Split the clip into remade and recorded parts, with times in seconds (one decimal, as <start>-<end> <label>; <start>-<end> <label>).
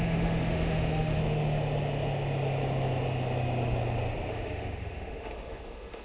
0.0-1.2 remade; 1.2-4.3 recorded; 4.3-6.0 remade